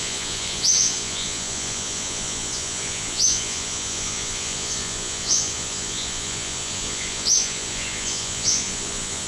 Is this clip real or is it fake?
fake